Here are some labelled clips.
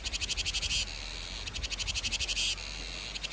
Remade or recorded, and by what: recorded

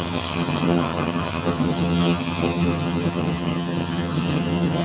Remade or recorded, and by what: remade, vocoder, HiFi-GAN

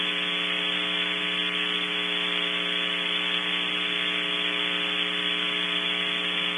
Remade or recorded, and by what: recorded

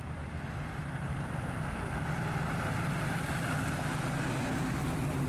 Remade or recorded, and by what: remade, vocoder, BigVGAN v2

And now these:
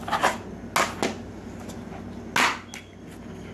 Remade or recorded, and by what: recorded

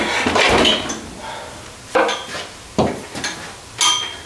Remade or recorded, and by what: recorded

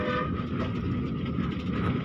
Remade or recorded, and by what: recorded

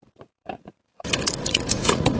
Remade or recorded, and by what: remade, vocoder, Vocos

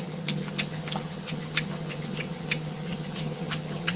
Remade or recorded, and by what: remade, vocoder, HiFi-GAN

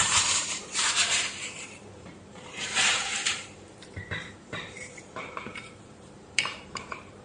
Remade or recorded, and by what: remade, vocoder, BigVGAN v2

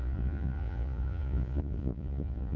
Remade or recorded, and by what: remade, vocoder, Vocos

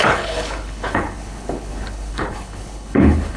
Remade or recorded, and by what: remade, codec, HILCodec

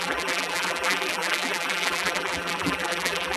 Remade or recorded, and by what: remade, vocoder, BigVGAN v2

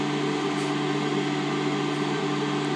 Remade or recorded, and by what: recorded